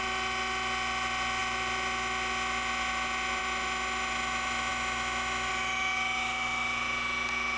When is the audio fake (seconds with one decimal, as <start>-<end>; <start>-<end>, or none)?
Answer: none